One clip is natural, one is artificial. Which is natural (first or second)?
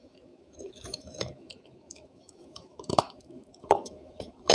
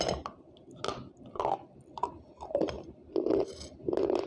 second